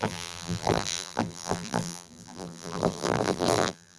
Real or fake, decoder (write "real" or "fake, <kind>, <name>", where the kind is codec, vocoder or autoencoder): fake, vocoder, BigVGAN v2